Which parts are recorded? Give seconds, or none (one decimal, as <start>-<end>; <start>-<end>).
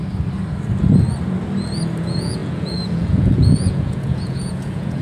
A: 0.0-2.0